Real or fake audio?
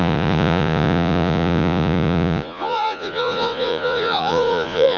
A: fake